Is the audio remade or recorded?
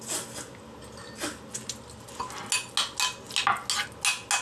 recorded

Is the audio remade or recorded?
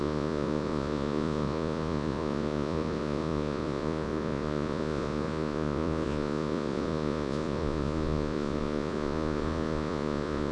remade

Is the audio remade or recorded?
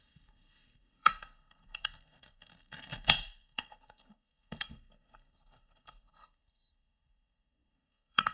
remade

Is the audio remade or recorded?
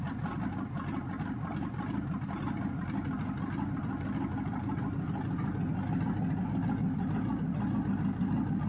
recorded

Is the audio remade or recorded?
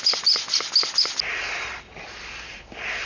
recorded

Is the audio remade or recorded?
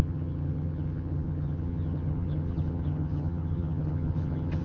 remade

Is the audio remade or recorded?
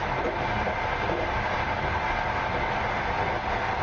recorded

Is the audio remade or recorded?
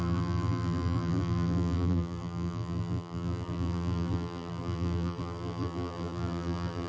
remade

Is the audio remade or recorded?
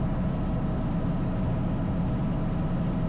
recorded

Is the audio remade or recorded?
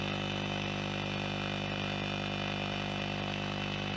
recorded